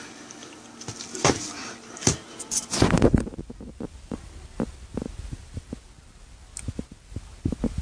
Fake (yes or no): no